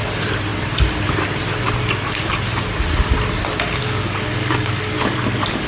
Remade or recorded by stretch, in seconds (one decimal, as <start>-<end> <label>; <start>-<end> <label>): 0.0-3.8 recorded; 3.8-5.7 remade